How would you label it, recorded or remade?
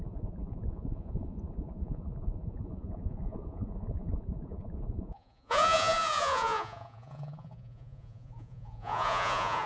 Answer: remade